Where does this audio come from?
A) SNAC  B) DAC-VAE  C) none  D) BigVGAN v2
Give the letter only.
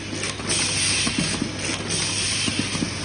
C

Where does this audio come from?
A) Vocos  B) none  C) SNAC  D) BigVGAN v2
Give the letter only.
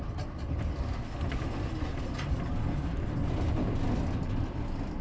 B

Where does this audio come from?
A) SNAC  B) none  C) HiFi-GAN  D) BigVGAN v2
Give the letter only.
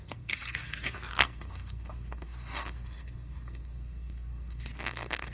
A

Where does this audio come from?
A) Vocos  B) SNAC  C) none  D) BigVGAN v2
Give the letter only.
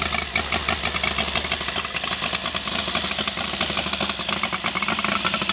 C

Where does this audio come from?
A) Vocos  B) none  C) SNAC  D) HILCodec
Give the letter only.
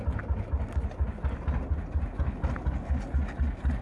B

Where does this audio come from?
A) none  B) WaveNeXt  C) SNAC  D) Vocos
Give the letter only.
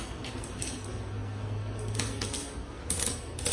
C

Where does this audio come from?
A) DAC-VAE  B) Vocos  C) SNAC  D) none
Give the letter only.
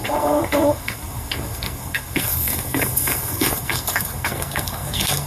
C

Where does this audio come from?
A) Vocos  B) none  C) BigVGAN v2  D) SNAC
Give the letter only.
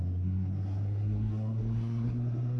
D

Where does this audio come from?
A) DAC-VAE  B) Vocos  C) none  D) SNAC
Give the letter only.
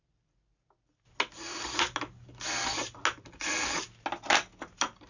C